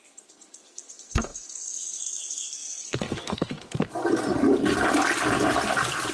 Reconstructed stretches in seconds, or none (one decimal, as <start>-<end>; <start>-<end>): 0.0-4.0